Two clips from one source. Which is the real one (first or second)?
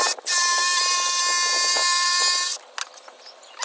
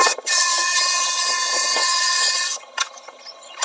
first